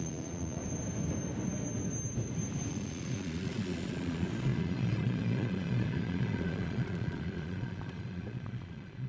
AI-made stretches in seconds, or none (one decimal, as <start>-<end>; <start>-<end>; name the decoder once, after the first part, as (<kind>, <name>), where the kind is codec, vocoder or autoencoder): 0.0-0.6 (vocoder, Vocos); 2.7-9.1